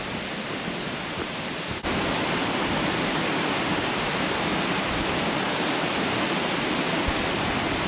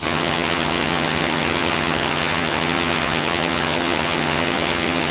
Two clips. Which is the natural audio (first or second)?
first